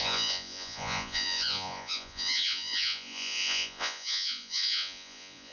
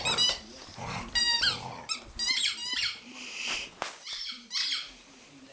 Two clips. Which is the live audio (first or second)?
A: second